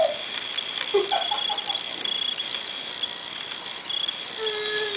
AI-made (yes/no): no